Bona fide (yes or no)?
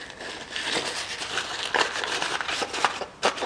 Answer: yes